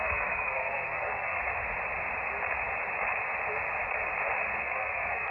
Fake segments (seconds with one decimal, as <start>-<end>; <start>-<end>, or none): 0.0-1.4; 4.6-5.3